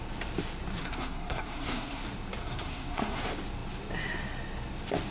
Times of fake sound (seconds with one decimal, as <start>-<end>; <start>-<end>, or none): 0.8-2.0; 2.4-3.2